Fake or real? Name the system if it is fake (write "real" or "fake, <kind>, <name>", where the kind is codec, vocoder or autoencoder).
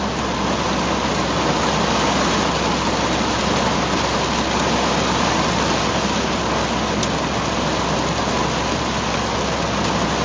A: real